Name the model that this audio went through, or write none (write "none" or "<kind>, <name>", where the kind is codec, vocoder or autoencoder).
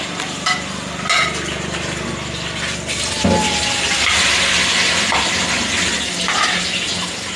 none